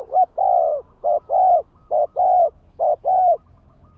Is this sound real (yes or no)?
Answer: no